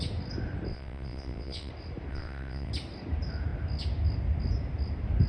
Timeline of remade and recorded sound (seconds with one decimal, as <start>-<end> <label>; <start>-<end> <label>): 0.0-0.7 recorded; 0.7-1.7 remade; 1.7-2.1 recorded; 2.1-2.7 remade; 2.7-5.3 recorded